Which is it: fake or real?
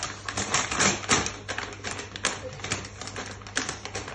real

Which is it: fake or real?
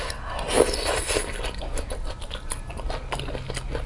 real